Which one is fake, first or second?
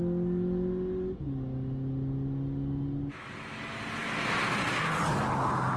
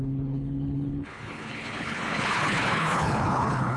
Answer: second